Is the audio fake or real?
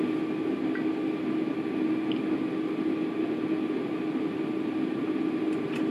real